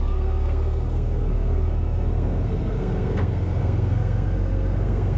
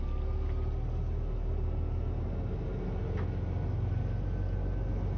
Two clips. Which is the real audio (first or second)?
second